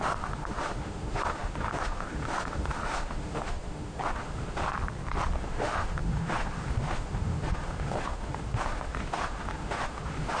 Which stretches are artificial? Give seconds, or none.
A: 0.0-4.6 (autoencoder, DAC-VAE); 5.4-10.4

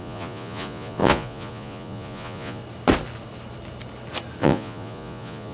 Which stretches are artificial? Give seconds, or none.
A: 0.0-2.6 (vocoder, Vocos); 4.4-5.5

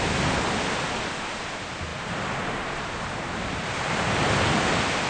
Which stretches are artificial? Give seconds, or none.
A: 1.9-5.1 (vocoder, BigVGAN v2)